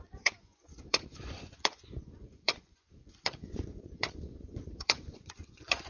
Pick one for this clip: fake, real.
fake